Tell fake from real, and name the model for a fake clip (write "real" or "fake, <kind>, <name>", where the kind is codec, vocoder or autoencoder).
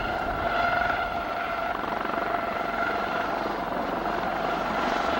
real